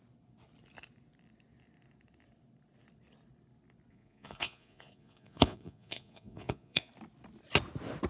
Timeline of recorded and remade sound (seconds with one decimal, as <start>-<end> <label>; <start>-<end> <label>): 0.0-3.9 recorded; 3.9-6.9 remade; 6.9-8.1 recorded